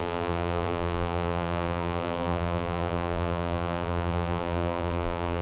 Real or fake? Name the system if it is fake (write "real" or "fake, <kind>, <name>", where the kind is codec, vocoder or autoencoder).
fake, vocoder, BigVGAN v2